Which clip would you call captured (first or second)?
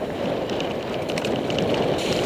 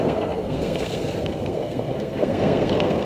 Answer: first